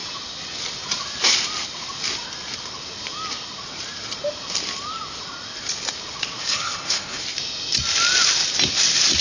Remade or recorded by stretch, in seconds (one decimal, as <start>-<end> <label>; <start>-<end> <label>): 0.0-6.4 recorded; 6.4-7.2 remade; 7.2-9.2 recorded